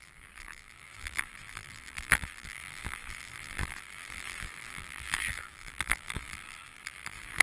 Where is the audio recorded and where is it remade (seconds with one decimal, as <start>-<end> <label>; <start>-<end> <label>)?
0.0-7.4 remade